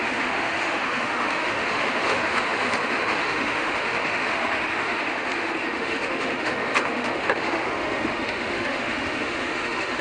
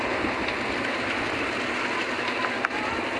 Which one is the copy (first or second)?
first